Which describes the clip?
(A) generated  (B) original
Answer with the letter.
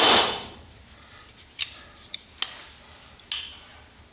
B